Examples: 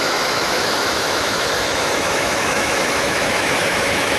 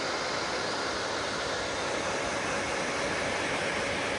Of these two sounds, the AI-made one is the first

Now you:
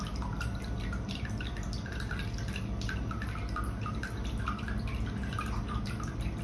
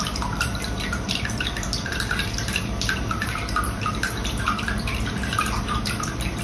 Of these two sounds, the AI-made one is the second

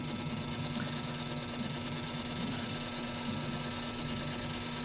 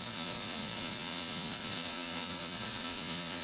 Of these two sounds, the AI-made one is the second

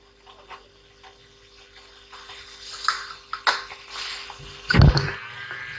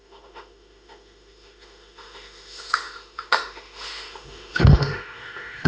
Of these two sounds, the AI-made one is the second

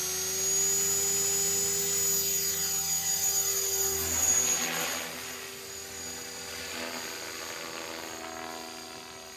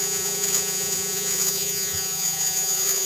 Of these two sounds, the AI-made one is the second